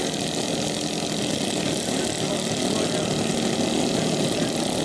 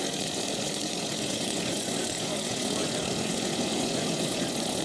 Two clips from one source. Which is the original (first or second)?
first